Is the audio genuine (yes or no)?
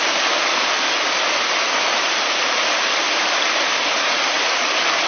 yes